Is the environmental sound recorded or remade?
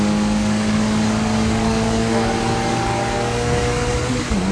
remade